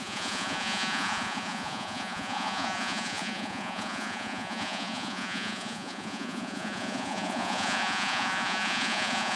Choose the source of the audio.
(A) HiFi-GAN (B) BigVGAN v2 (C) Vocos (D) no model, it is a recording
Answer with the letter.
C